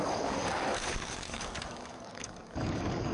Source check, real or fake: fake